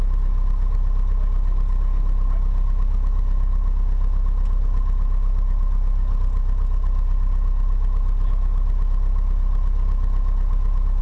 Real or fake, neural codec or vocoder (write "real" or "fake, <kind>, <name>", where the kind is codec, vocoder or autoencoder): real